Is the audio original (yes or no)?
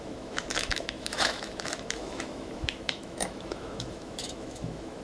no